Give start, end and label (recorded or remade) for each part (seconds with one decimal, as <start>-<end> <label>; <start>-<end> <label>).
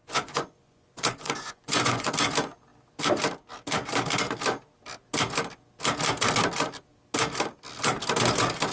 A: 0.0-2.1 remade; 2.1-8.7 recorded